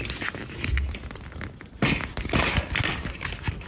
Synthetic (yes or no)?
no